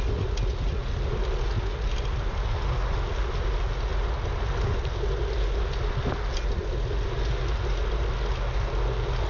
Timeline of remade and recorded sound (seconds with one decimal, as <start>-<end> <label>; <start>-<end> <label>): 0.0-9.3 recorded